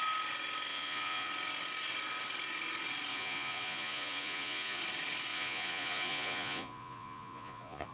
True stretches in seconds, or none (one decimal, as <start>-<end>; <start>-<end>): 0.0-0.7; 1.3-3.1; 4.8-5.3